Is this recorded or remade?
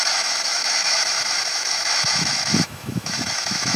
remade